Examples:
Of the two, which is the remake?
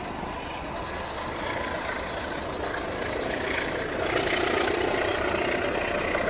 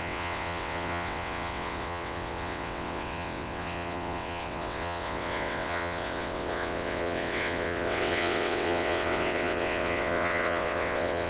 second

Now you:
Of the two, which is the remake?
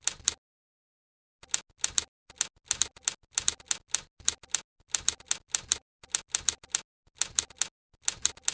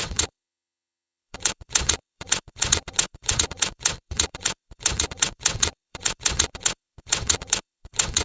second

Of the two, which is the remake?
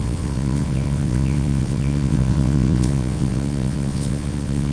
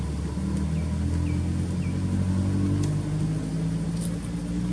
first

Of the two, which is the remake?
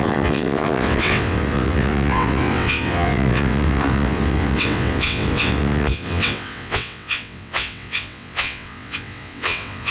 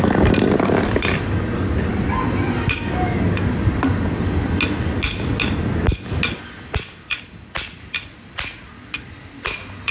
first